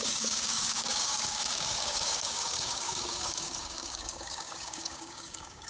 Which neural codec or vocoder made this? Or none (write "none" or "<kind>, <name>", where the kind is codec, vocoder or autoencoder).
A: codec, DAC